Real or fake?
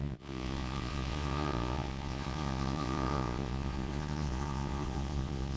fake